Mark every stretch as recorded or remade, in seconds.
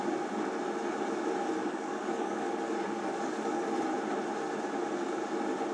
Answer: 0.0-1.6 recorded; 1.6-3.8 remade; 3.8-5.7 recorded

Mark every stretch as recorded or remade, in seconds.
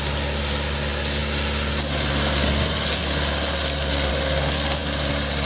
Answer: 0.0-5.5 recorded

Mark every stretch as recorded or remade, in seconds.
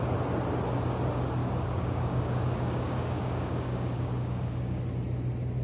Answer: 0.0-1.4 recorded; 1.4-4.8 remade; 4.8-5.6 recorded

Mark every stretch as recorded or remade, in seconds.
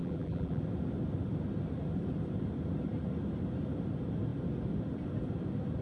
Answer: 0.0-0.6 remade; 0.6-5.8 recorded